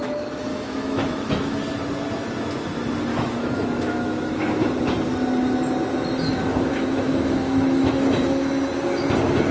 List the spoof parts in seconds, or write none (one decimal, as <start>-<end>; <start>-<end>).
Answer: 0.5-1.6; 3.1-4.7; 6.3-8.2